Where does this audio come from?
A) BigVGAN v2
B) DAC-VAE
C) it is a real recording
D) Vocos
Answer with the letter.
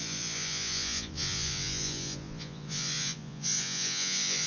D